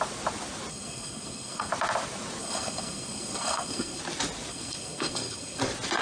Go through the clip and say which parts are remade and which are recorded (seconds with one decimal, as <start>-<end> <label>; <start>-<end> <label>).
0.0-0.7 recorded; 0.7-1.7 remade; 1.7-2.4 recorded; 2.4-4.0 remade; 4.0-4.5 recorded; 4.5-5.6 remade; 5.6-6.0 recorded